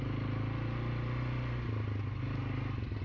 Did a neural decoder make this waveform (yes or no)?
no